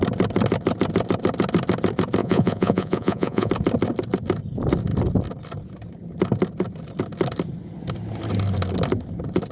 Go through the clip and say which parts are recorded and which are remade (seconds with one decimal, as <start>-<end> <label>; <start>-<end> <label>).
0.0-2.2 recorded; 2.2-3.5 remade; 3.5-9.5 recorded